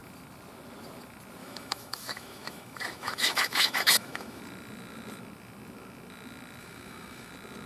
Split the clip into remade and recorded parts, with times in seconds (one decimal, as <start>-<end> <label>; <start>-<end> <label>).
0.0-1.4 recorded; 1.4-4.4 remade; 4.4-6.6 recorded; 6.6-7.3 remade; 7.3-7.7 recorded